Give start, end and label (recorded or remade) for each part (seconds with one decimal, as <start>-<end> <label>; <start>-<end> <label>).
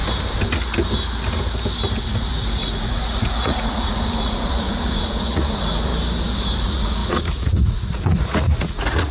0.0-2.0 recorded; 2.0-5.9 remade; 5.9-6.6 recorded; 6.6-9.1 remade